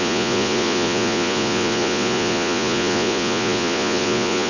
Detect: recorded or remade remade